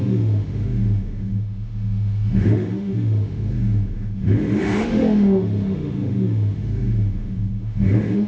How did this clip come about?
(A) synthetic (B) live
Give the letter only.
A